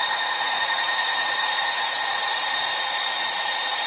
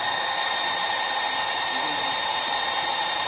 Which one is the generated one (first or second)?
first